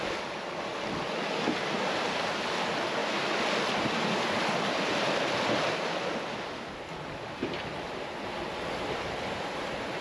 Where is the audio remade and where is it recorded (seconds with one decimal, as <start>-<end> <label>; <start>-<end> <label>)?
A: 0.0-10.0 recorded